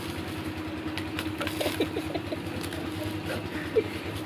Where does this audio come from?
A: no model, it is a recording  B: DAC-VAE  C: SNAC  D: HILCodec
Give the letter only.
A